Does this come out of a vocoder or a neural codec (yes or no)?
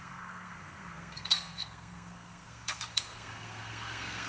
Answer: yes